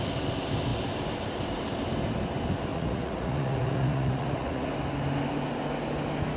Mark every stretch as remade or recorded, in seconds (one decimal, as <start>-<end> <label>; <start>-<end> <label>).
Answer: 0.0-2.7 recorded; 2.7-4.7 remade; 4.7-6.4 recorded